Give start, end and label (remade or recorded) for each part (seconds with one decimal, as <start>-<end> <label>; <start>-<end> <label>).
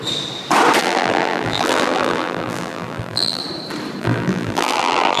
0.0-0.8 recorded; 0.8-3.4 remade; 3.4-4.0 recorded; 4.0-5.2 remade